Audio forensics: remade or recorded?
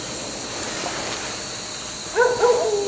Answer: recorded